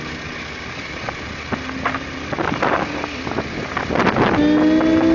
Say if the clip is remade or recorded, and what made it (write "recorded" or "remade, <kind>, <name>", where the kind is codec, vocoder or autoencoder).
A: recorded